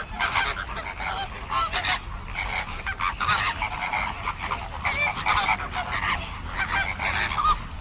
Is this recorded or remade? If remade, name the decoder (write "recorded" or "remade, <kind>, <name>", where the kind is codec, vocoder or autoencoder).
recorded